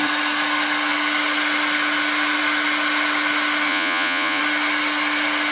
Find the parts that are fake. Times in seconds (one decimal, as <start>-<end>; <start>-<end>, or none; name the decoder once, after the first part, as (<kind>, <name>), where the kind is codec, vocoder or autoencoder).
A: 3.7-4.4 (vocoder, Vocos)